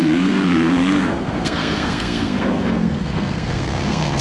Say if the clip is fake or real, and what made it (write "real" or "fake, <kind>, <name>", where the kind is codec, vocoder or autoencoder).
fake, codec, SNAC